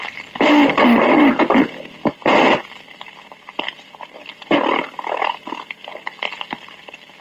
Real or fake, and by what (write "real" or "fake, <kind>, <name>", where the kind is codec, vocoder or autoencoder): real